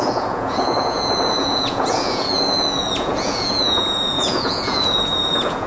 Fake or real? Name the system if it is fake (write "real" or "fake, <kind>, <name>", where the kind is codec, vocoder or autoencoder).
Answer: fake, vocoder, Vocos